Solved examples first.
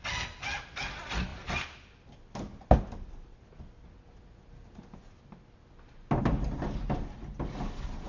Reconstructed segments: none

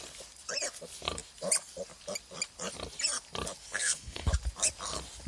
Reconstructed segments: 3.6-4.3

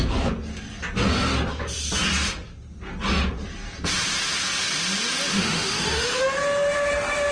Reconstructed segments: 5.3-6.2

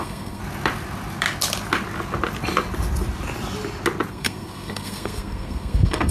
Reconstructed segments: 0.0-0.4; 4.1-6.1